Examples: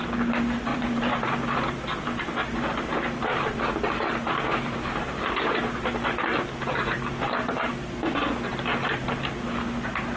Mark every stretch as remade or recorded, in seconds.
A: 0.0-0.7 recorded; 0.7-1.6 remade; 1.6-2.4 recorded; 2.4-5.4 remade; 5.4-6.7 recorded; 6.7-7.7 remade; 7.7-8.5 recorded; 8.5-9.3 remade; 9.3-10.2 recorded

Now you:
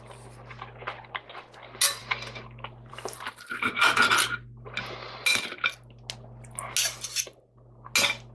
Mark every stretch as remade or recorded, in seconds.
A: 0.0-8.3 recorded

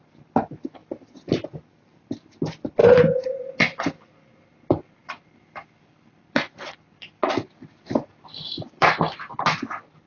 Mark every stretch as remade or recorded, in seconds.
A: 0.0-5.0 recorded; 5.0-9.0 remade; 9.0-10.1 recorded

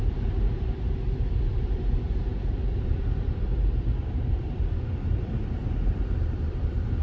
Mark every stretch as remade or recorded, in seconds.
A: 0.0-7.0 remade

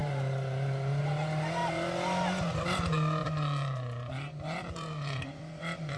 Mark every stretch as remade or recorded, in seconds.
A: 0.0-3.2 recorded; 3.2-6.0 remade

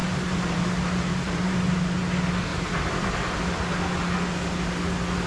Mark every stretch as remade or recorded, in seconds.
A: 0.0-0.7 remade; 0.7-1.1 recorded; 1.1-2.0 remade; 2.0-2.5 recorded; 2.5-3.4 remade; 3.4-5.3 recorded